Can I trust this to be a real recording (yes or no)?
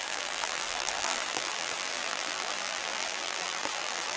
no